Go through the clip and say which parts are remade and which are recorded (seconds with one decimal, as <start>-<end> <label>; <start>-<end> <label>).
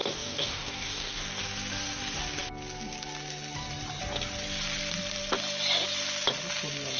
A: 0.0-1.4 remade; 1.4-7.0 recorded